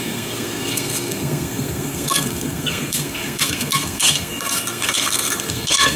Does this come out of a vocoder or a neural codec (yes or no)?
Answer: yes